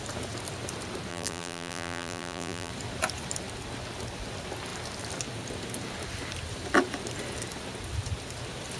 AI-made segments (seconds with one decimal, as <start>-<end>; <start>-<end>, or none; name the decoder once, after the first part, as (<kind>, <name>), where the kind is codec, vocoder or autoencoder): 1.1-2.7 (vocoder, BigVGAN v2)